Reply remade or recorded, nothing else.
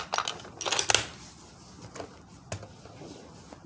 recorded